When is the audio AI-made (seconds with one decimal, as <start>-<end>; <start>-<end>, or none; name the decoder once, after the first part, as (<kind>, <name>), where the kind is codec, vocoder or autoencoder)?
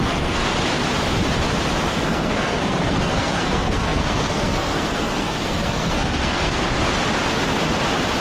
0.0-0.4 (codec, SNAC); 1.9-6.6